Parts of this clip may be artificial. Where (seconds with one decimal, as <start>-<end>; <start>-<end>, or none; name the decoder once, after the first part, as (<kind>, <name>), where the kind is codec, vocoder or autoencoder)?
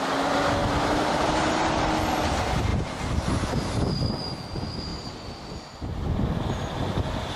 none